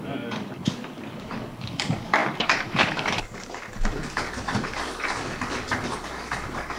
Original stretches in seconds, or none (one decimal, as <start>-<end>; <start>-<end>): none